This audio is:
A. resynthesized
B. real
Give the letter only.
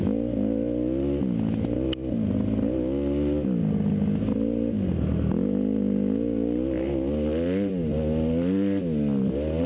B